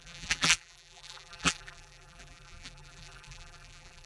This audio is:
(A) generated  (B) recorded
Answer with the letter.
A